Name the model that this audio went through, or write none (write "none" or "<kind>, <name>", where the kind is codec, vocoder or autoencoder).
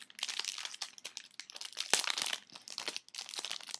none